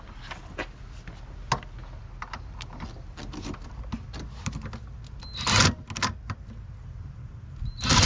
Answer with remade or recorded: recorded